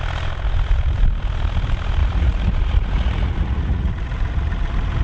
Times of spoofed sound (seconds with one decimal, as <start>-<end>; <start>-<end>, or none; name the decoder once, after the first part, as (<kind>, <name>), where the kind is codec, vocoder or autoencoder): 2.0-3.9 (vocoder, Vocos)